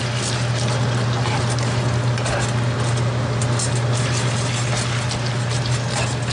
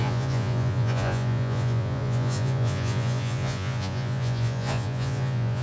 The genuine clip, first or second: first